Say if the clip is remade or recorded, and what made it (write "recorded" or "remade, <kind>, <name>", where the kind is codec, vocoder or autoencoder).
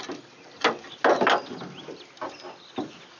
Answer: recorded